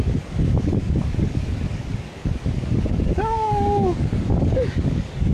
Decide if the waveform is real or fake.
fake